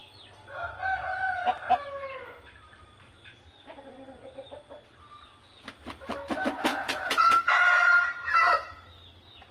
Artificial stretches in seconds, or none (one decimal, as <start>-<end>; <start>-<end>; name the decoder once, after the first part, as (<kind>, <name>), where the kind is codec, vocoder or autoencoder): 6.7-7.5 (vocoder, Vocos)